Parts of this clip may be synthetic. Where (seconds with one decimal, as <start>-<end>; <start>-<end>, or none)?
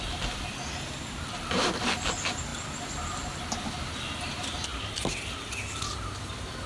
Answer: none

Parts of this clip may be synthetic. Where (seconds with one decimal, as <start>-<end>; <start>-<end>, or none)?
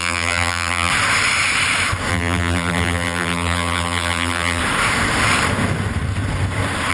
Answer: 0.0-0.9; 2.1-4.6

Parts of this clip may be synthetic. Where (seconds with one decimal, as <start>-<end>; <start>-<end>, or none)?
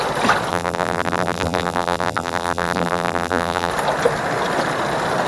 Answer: 0.5-3.7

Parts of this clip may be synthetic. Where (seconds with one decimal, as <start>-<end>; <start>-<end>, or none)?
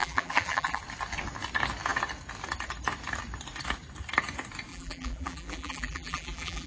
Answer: 0.0-0.8; 4.7-6.7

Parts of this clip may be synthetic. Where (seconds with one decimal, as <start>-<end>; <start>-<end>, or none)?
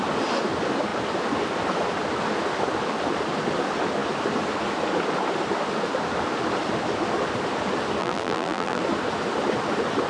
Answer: 8.0-8.8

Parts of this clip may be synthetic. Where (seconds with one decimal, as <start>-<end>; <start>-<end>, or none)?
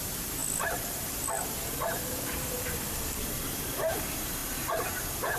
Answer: 0.0-0.4; 3.6-4.4